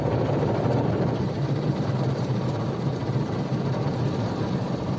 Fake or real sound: fake